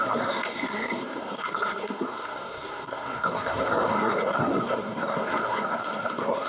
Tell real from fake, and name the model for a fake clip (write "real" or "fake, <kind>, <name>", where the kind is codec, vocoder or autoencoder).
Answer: fake, codec, SNAC